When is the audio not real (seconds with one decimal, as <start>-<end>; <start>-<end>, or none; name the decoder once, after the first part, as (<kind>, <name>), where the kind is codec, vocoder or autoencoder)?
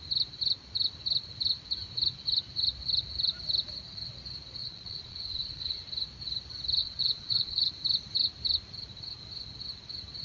4.6-5.9 (vocoder, Vocos); 6.8-7.7